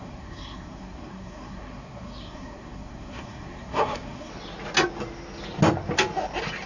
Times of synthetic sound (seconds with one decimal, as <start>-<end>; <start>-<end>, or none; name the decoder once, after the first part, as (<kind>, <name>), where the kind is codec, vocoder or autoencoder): 0.0-4.3 (codec, SNAC)